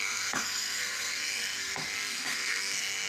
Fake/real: fake